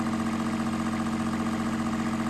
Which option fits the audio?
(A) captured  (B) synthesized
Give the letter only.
A